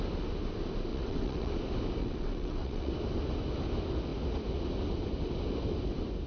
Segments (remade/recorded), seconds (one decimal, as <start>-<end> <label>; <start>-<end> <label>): 0.0-0.9 recorded; 0.9-1.5 remade; 1.5-2.0 recorded; 2.0-2.9 remade; 2.9-6.3 recorded